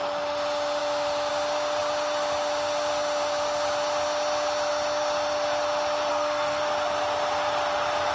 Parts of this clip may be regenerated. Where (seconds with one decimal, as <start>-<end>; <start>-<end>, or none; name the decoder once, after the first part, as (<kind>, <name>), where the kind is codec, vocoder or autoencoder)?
6.1-6.6 (codec, SNAC)